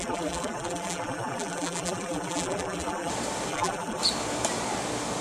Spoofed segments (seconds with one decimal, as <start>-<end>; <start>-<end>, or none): 0.0-3.1; 3.5-4.0